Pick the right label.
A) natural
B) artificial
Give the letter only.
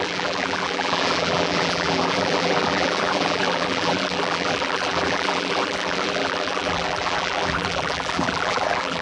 B